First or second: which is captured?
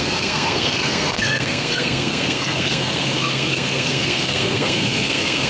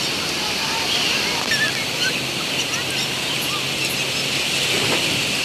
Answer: second